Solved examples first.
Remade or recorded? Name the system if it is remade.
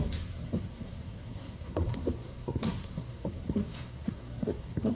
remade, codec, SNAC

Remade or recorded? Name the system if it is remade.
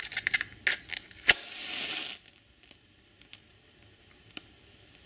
recorded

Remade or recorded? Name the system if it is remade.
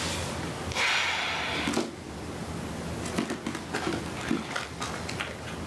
recorded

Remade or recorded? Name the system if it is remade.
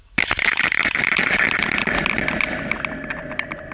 remade, vocoder, BigVGAN v2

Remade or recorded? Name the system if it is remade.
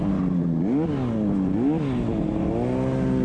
recorded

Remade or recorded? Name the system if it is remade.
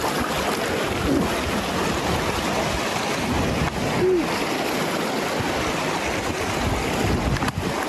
recorded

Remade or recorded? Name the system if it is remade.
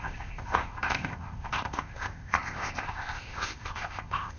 remade, codec, ZipCodec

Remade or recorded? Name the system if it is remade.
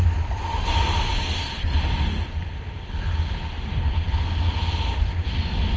recorded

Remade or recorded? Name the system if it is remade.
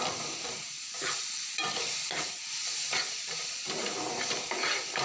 remade, vocoder, BigVGAN v2